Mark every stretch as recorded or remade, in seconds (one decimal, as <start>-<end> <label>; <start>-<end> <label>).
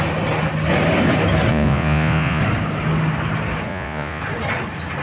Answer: 0.0-1.5 recorded; 1.5-2.4 remade; 2.4-3.7 recorded; 3.7-4.2 remade; 4.2-5.0 recorded